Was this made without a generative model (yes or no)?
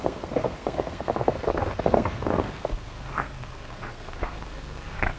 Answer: no